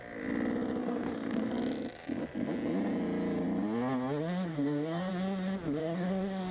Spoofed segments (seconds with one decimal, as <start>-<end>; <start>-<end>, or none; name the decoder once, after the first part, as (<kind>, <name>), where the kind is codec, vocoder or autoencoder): 0.8-1.5 (codec, DAC); 4.5-5.1; 5.8-6.5

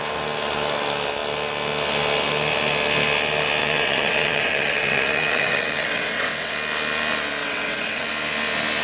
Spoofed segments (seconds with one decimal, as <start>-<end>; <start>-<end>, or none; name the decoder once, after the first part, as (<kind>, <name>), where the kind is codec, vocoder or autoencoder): 3.6-6.5 (vocoder, WaveNeXt); 7.4-8.1

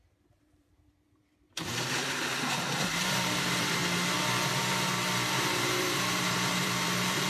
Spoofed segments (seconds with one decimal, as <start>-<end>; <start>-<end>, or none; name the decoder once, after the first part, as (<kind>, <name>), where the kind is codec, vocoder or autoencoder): 0.0-3.8 (vocoder, BigVGAN v2); 5.5-7.3

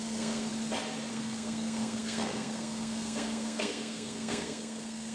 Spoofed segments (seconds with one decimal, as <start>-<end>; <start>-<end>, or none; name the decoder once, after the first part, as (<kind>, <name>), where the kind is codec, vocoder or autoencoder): 0.0-0.5 (codec, SNAC); 1.1-5.1